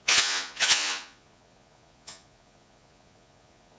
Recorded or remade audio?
remade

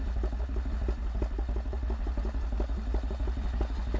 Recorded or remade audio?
recorded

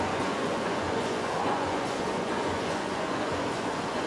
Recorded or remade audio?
remade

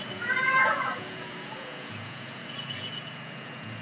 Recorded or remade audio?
remade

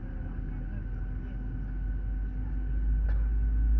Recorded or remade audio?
recorded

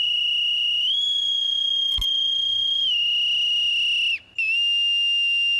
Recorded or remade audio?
recorded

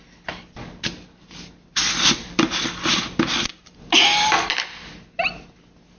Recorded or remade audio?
recorded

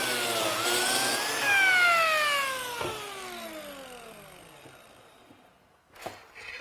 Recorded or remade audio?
recorded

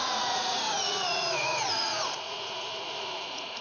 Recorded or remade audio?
remade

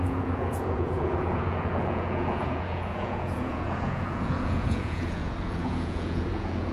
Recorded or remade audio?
remade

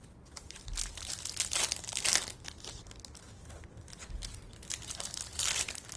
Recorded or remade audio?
recorded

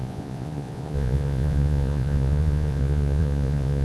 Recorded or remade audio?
remade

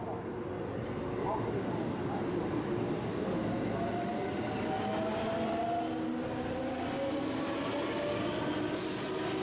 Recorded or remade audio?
recorded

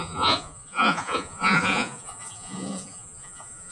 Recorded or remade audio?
remade